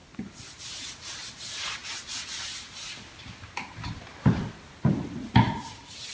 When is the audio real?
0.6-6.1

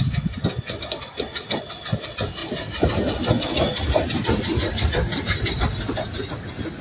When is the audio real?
0.0-6.8

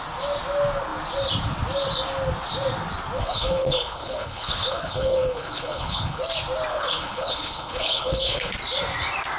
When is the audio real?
0.0-3.2; 6.2-6.7; 8.5-9.4

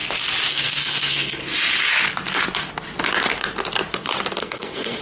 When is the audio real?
0.0-0.5; 1.4-4.4

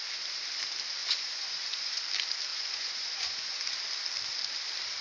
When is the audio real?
0.0-1.0; 2.0-2.5; 3.6-5.0